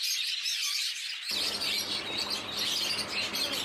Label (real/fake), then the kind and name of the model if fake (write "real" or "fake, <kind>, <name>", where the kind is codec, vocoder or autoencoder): real